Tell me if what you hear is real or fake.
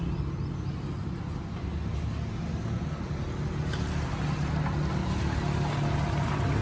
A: real